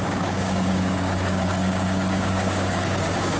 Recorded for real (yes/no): no